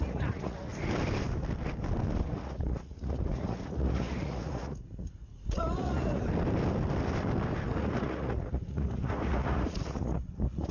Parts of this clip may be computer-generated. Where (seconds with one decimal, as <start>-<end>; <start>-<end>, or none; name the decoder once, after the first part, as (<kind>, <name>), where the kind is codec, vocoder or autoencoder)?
0.0-0.7 (vocoder, Vocos); 2.3-6.2; 7.8-10.7